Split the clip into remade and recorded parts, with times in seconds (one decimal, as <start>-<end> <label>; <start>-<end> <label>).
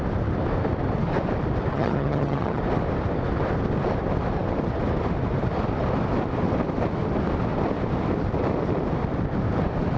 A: 0.0-1.7 recorded; 1.7-2.6 remade; 2.6-10.0 recorded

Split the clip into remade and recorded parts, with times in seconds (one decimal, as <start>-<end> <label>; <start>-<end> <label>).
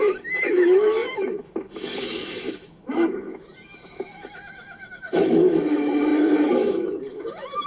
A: 0.0-7.7 remade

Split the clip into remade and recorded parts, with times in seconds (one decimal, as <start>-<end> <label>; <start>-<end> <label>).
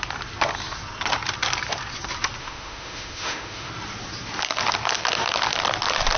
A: 0.0-2.4 recorded; 2.4-3.7 remade; 3.7-6.2 recorded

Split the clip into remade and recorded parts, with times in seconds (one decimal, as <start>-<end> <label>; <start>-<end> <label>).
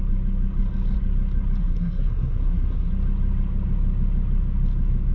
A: 0.0-1.6 recorded; 1.6-2.9 remade; 2.9-5.1 recorded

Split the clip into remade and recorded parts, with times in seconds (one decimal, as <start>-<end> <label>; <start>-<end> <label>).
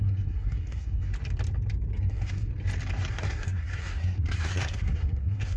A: 0.0-1.1 remade; 1.1-2.0 recorded; 2.0-2.5 remade; 2.5-3.1 recorded; 3.1-5.6 remade